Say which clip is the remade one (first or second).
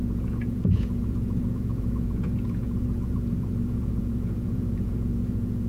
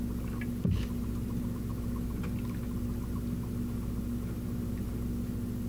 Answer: first